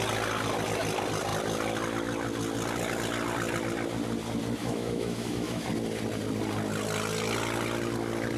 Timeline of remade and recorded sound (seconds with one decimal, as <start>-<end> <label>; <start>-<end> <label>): 0.0-4.6 recorded; 4.6-5.7 remade; 5.7-8.4 recorded